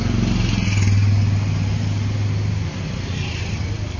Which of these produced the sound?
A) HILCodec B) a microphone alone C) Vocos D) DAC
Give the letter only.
B